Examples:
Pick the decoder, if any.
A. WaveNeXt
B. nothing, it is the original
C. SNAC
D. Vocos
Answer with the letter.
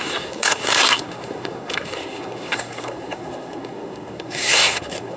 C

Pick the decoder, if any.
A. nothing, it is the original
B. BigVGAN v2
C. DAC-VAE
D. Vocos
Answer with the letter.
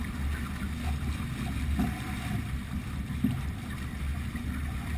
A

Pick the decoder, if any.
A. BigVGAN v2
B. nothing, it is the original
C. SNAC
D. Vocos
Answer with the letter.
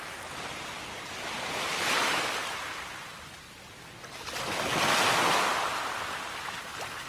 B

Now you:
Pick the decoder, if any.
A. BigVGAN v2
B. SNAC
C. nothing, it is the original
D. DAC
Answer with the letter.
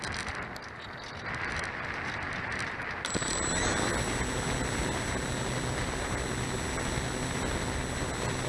C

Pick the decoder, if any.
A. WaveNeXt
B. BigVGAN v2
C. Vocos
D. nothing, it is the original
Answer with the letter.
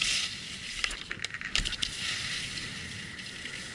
D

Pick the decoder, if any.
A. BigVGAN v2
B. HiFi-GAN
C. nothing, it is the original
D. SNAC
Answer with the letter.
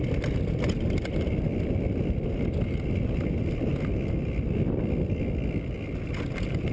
C